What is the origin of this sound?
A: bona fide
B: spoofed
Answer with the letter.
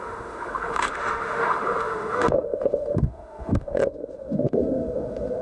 B